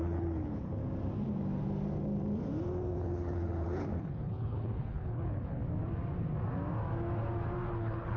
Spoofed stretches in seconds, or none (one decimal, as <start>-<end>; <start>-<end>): 0.0-0.8; 3.0-5.6; 7.7-8.2